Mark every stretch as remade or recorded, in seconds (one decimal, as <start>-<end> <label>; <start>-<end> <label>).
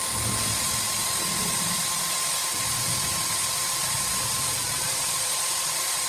0.0-2.4 recorded; 2.4-6.1 remade